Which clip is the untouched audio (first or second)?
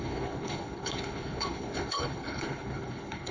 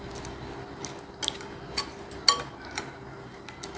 second